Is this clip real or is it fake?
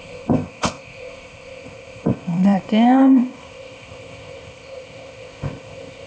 fake